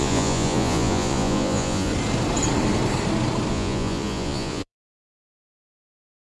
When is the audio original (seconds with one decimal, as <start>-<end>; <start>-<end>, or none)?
1.9-3.5

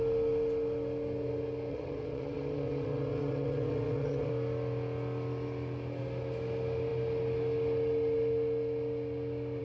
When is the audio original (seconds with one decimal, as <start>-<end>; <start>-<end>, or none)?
0.0-1.7; 4.3-9.6

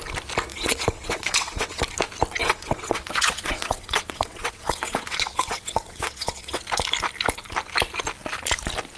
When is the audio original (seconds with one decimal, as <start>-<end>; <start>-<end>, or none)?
0.0-0.5; 1.8-2.4; 6.6-9.0